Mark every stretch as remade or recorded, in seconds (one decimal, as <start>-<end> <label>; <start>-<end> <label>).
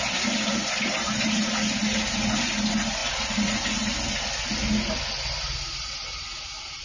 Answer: 0.0-6.8 recorded